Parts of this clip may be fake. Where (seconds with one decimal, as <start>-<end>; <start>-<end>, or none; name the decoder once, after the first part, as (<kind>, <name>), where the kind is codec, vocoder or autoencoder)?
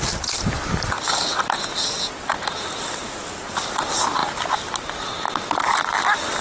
0.0-1.3 (vocoder, BigVGAN v2); 3.6-4.2